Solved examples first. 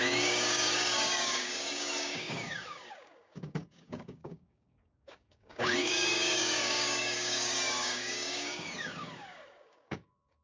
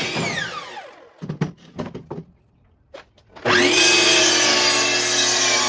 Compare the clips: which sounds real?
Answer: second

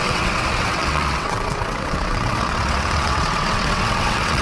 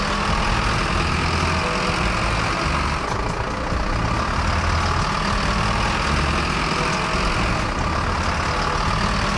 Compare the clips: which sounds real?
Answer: second